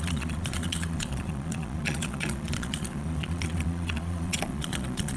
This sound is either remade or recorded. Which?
remade